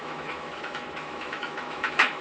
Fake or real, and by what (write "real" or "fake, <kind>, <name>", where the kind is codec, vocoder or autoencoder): fake, autoencoder, DAC-VAE